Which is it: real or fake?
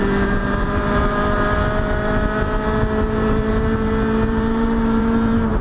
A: fake